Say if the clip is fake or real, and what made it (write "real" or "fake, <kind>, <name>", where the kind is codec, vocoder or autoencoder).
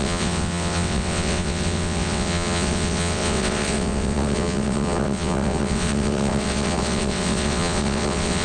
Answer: fake, vocoder, WaveNeXt